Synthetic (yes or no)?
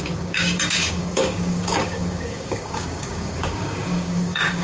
yes